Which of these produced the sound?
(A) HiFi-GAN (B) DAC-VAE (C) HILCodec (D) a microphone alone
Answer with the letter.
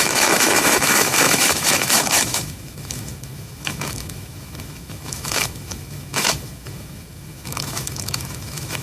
B